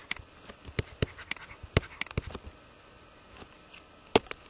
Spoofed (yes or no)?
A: no